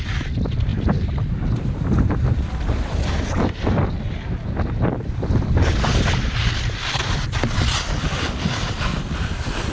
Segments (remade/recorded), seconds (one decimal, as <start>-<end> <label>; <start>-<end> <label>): 0.0-9.7 recorded